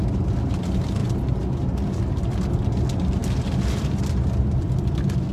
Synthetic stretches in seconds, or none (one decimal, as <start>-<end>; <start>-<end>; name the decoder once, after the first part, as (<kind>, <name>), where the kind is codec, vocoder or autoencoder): none